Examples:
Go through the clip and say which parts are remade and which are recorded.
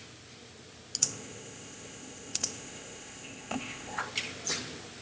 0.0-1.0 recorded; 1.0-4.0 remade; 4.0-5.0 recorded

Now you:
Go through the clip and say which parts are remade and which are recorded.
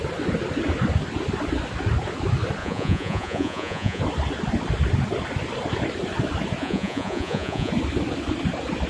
0.0-2.6 recorded; 2.6-4.0 remade; 4.0-6.6 recorded; 6.6-7.7 remade; 7.7-8.9 recorded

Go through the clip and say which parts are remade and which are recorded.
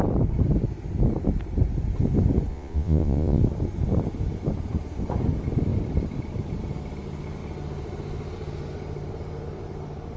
0.0-2.5 recorded; 2.5-3.4 remade; 3.4-10.2 recorded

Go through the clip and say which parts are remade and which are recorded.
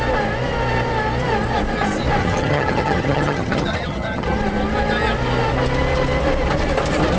0.0-2.2 recorded; 2.2-4.4 remade; 4.4-7.2 recorded